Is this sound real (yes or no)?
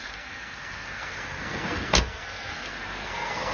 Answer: no